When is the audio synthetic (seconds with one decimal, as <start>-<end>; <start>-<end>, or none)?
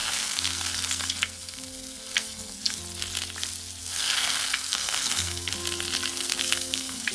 0.0-2.8; 3.8-5.5; 6.1-7.1